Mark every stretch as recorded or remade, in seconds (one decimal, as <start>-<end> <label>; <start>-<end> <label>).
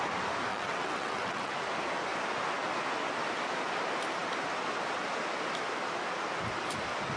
0.0-0.5 recorded; 0.5-1.5 remade; 1.5-7.2 recorded